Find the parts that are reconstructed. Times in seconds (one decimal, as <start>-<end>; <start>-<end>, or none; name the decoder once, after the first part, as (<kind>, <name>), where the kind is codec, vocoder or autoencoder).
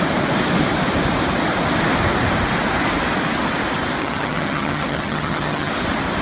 4.0-5.7 (vocoder, HiFi-GAN)